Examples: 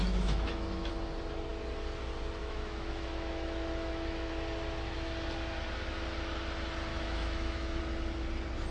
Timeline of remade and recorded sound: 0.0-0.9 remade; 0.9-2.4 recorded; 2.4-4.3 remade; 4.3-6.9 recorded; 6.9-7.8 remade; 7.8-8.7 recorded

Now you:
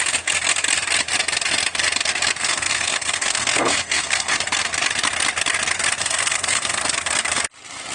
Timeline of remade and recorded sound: 0.0-2.4 recorded; 2.4-4.3 remade; 4.3-6.0 recorded; 6.0-6.8 remade; 6.8-7.9 recorded

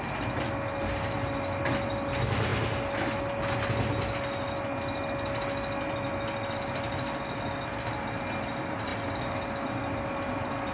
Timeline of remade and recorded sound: 0.0-10.7 recorded

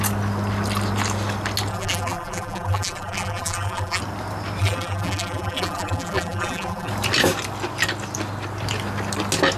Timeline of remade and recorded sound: 0.0-1.7 recorded; 1.7-4.0 remade; 4.0-4.6 recorded; 4.6-6.9 remade; 6.9-9.6 recorded

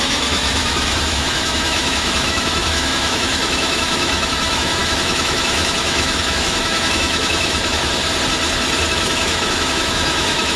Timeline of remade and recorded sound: 0.0-8.0 remade; 8.0-8.9 recorded; 8.9-10.6 remade

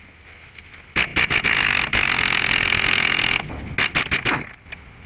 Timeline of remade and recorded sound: 0.0-5.1 recorded

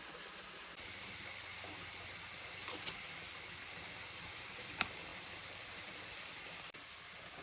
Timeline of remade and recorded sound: 0.0-7.4 recorded

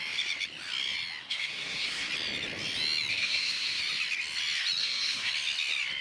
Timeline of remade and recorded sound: 0.0-1.2 recorded; 1.2-2.1 remade; 2.1-3.1 recorded; 3.1-3.8 remade; 3.8-4.8 recorded; 4.8-5.3 remade; 5.3-6.0 recorded